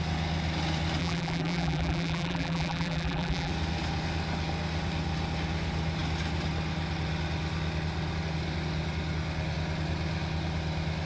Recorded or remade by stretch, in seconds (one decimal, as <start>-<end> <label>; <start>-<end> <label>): 0.0-1.0 recorded; 1.0-3.5 remade; 3.5-11.1 recorded